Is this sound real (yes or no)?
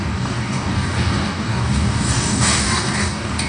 no